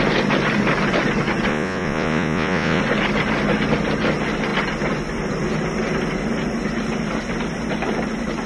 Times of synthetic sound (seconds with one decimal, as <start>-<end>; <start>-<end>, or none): 1.5-2.8